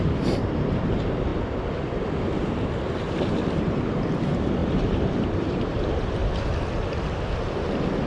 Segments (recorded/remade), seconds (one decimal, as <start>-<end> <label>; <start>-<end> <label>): 0.0-1.3 remade; 1.3-2.8 recorded; 2.8-6.2 remade; 6.2-8.1 recorded